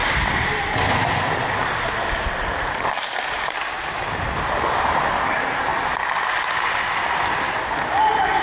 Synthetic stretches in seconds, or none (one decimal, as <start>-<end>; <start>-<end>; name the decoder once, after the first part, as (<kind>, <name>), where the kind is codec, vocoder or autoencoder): none

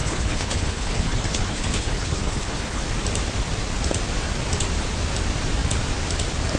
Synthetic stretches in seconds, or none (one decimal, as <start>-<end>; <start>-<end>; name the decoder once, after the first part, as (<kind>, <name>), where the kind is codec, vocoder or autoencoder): 0.0-2.8 (codec, HILCodec)